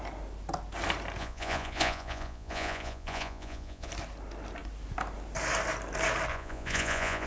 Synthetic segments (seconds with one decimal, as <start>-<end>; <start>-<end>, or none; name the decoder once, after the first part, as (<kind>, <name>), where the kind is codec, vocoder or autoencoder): 1.2-3.9 (vocoder, Vocos); 6.3-7.3